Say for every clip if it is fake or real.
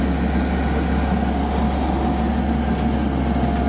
real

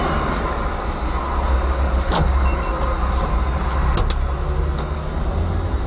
real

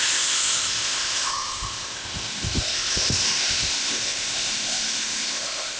fake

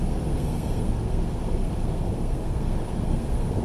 fake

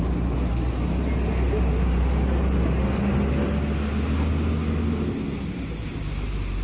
real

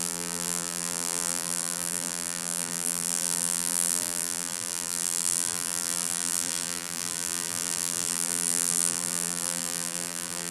fake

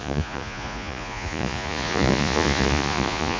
fake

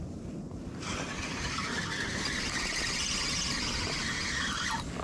real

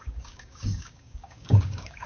fake